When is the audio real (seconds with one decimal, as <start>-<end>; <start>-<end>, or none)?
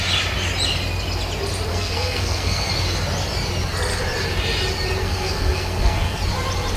0.0-1.7; 2.7-5.0; 6.2-6.8